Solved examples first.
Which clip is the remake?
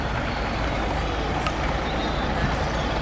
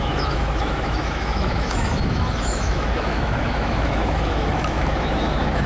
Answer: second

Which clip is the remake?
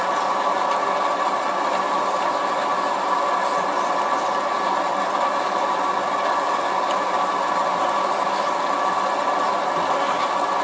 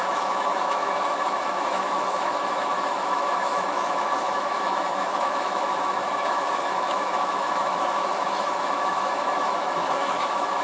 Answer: second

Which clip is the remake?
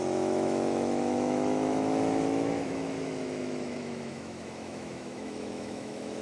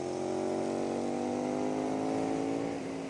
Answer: first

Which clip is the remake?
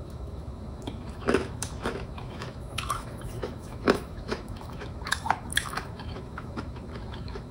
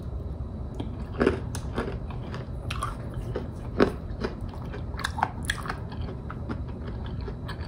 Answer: first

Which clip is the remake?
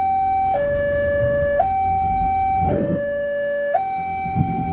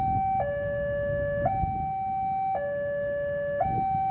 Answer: first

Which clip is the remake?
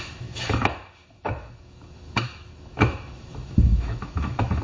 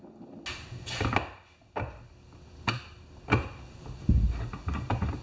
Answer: first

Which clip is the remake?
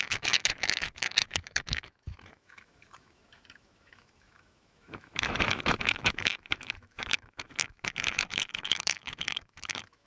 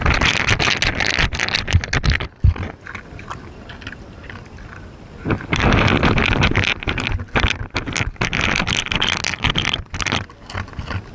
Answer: first